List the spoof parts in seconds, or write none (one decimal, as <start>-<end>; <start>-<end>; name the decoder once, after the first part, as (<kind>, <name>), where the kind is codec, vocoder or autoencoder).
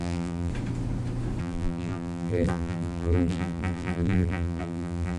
0.0-0.5 (vocoder, BigVGAN v2); 1.4-5.2